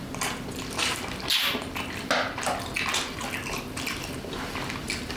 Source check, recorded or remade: recorded